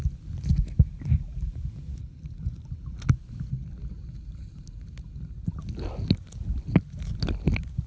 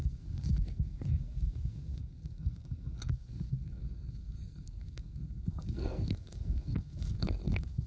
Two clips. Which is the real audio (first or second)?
first